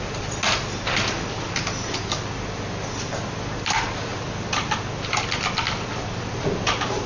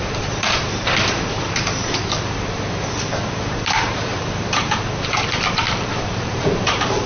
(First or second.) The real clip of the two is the first